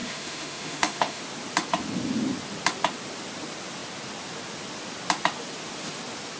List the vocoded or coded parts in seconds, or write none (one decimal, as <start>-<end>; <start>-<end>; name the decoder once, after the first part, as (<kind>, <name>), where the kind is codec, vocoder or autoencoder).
0.0-1.2 (autoencoder, DAC-VAE)